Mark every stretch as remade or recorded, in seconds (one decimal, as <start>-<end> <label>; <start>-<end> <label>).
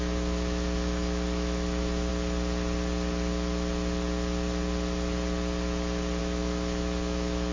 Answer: 0.0-2.1 remade; 2.1-6.2 recorded; 6.2-7.5 remade